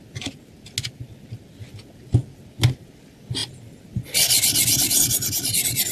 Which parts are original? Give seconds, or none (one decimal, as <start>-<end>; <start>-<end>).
0.0-5.9